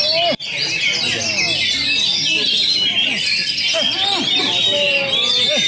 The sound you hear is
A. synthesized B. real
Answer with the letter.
B